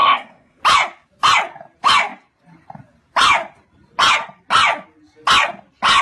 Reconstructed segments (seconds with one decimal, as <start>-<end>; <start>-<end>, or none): 0.0-0.6